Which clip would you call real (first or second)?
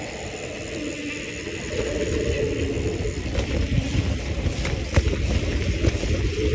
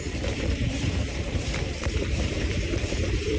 first